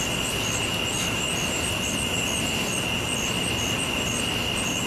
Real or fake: real